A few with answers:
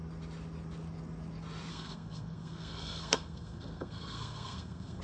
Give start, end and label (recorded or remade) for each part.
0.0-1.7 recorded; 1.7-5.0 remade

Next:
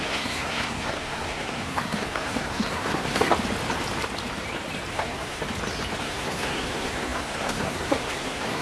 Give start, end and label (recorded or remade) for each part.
0.0-3.3 remade; 3.3-4.9 recorded; 4.9-5.4 remade; 5.4-6.0 recorded; 6.0-8.6 remade

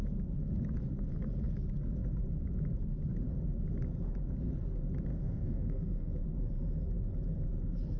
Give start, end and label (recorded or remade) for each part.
0.0-5.1 recorded; 5.1-6.1 remade; 6.1-8.0 recorded

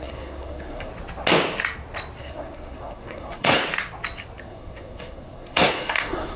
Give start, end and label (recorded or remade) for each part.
0.0-0.9 remade; 0.9-2.2 recorded; 2.2-3.6 remade; 3.6-4.4 recorded; 4.4-6.4 remade